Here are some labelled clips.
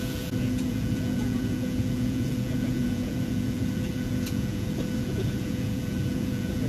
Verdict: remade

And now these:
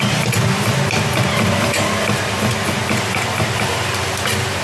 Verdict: recorded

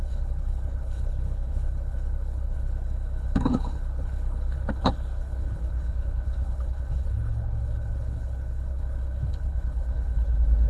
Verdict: remade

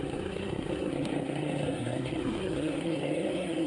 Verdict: remade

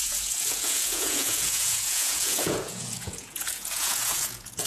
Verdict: remade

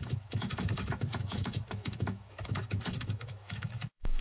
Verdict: remade